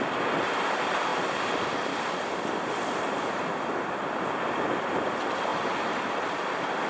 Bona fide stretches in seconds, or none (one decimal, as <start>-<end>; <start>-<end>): 0.0-6.9